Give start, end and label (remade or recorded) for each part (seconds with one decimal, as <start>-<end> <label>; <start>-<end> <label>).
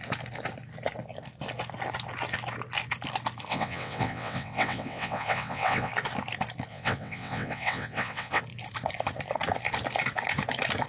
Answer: 0.0-3.5 recorded; 3.5-5.9 remade; 5.9-6.7 recorded; 6.7-8.4 remade; 8.4-10.9 recorded